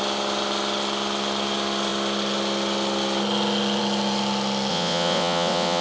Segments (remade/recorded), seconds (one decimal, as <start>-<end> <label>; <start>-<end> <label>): 0.0-4.7 recorded; 4.7-5.8 remade